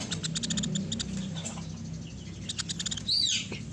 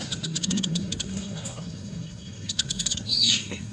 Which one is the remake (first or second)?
second